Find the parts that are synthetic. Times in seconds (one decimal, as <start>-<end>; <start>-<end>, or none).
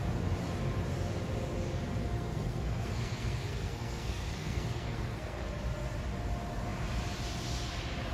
2.0-5.5